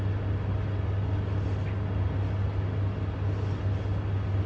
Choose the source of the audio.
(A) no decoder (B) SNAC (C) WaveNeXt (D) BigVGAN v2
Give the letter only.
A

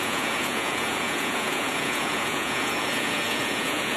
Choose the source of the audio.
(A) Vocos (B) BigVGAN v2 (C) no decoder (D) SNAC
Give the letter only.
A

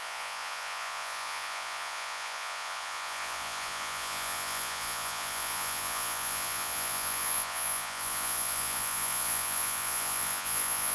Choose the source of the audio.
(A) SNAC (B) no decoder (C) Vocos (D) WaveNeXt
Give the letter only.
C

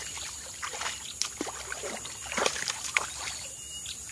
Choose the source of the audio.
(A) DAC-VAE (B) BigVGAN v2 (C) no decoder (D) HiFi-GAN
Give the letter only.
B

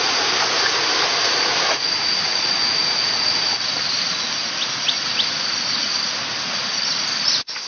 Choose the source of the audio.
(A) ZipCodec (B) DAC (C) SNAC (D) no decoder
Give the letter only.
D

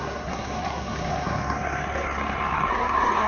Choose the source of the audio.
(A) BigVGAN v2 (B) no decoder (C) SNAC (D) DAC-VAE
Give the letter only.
C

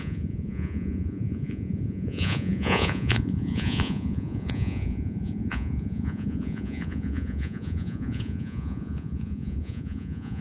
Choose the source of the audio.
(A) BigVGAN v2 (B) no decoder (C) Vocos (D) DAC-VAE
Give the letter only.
C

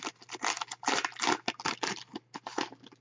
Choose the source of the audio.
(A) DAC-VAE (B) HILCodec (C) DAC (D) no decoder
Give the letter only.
D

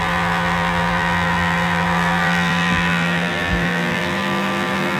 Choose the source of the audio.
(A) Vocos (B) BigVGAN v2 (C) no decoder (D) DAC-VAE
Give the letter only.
B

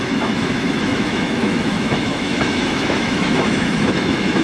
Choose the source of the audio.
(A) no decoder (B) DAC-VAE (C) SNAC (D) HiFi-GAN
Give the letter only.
B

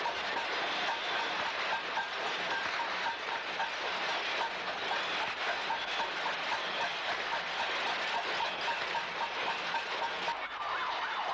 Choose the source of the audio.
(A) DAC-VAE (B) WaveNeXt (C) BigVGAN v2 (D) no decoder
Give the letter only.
D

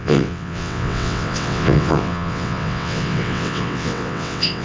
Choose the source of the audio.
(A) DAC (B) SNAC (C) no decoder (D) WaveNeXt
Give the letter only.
D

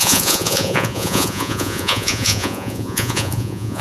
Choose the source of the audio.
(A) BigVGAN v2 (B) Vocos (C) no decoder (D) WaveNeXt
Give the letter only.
B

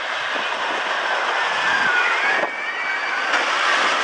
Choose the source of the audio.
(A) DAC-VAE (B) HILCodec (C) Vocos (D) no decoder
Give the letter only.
D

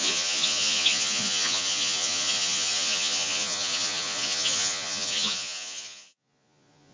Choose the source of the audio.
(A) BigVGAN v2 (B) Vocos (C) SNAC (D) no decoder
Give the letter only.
B